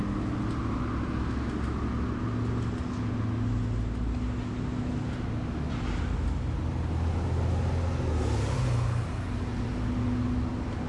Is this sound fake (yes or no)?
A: no